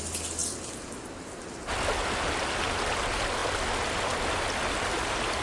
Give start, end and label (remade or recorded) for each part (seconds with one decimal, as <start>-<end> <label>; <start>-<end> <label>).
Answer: 0.0-5.4 recorded